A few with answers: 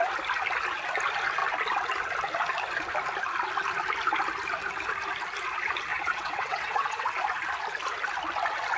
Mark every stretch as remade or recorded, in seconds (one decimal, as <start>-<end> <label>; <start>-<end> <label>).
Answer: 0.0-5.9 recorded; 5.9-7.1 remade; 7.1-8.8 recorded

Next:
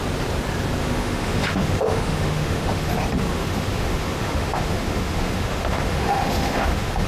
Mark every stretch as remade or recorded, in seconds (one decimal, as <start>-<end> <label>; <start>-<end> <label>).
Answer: 0.0-0.8 recorded; 0.8-2.9 remade; 2.9-3.3 recorded; 3.3-7.1 remade

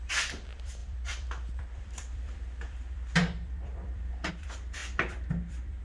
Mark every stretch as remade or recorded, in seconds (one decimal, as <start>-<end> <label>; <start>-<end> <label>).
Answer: 0.0-5.8 remade

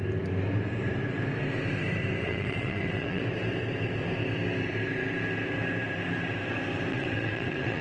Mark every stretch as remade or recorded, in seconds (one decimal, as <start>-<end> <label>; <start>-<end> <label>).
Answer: 0.0-2.2 recorded; 2.2-3.2 remade; 3.2-6.9 recorded; 6.9-7.8 remade

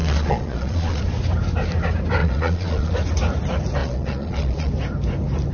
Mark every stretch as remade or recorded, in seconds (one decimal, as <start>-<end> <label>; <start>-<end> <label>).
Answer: 0.0-1.0 remade; 1.0-2.2 recorded; 2.2-2.9 remade; 2.9-3.8 recorded; 3.8-4.7 remade; 4.7-5.5 recorded

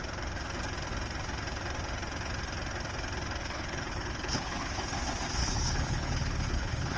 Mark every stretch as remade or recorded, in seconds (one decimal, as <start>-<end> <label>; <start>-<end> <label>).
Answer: 0.0-3.4 recorded; 3.4-4.8 remade; 4.8-5.4 recorded; 5.4-7.0 remade

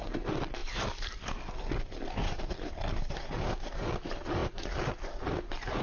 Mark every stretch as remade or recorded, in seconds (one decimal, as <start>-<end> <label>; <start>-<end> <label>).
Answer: 0.0-5.8 recorded

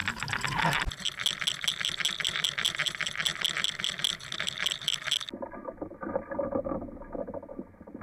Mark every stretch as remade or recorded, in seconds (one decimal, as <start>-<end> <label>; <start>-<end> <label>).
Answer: 0.0-8.0 recorded